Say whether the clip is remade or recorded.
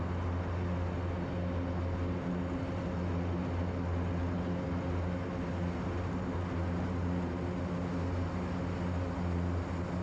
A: recorded